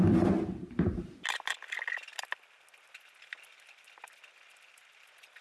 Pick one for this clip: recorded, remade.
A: recorded